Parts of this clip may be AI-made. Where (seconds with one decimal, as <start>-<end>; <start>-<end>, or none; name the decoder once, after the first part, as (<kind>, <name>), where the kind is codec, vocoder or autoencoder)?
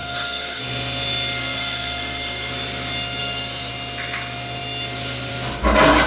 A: 0.0-0.6 (codec, SNAC); 1.4-2.5; 3.2-3.7